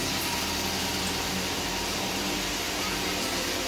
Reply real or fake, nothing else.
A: real